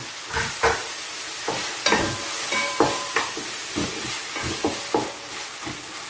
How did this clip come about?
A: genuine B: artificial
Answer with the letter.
A